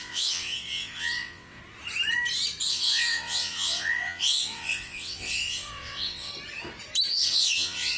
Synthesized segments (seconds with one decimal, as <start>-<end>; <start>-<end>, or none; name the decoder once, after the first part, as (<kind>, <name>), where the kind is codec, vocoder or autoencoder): 0.0-1.6 (vocoder, WaveNeXt); 2.7-6.3; 7.1-8.0